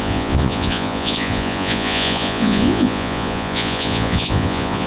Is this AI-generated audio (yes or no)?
yes